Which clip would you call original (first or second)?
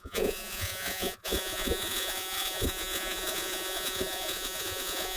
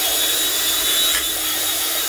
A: second